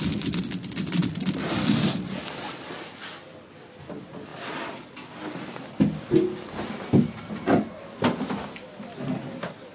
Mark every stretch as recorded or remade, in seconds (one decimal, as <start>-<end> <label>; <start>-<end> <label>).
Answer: 0.0-9.7 recorded